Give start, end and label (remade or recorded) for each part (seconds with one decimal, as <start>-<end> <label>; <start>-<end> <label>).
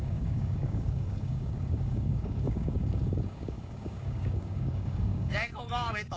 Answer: 0.0-6.2 remade